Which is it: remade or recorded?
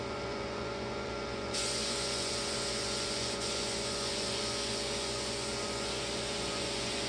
remade